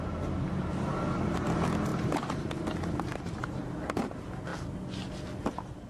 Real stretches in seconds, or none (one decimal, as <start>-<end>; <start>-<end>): 0.0-1.9; 2.5-3.1; 3.6-5.9